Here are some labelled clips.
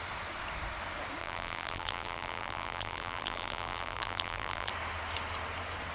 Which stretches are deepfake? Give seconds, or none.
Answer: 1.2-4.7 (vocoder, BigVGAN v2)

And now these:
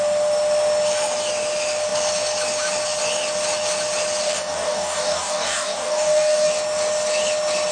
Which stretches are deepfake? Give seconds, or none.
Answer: 4.2-6.5 (codec, DAC)